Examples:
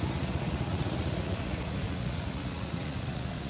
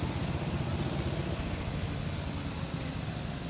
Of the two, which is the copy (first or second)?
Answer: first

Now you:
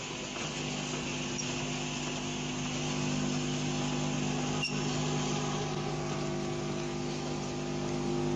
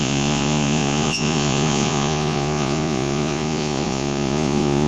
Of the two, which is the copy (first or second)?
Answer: second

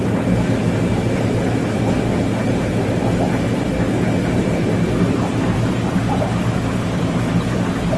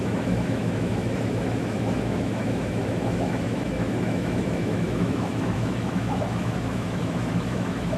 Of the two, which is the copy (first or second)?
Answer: second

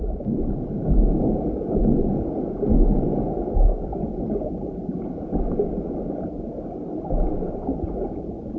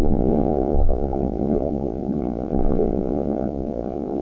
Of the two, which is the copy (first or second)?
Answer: second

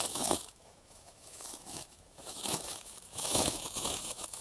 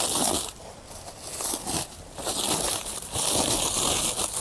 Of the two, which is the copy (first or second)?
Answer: first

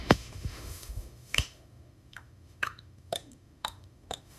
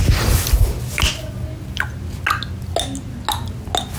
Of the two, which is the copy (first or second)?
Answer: first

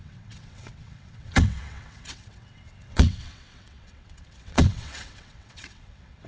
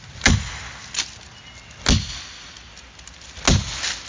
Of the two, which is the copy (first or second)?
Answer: first